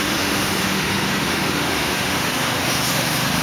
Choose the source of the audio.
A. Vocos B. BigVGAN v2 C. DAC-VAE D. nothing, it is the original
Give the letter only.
C